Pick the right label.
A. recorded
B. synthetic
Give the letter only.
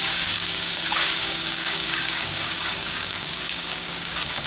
B